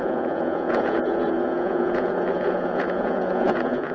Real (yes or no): no